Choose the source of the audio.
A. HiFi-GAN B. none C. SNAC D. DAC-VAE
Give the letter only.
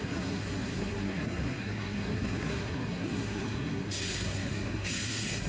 C